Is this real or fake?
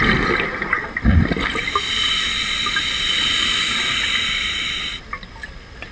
real